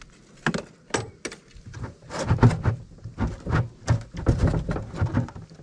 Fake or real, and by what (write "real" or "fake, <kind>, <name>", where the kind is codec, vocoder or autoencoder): real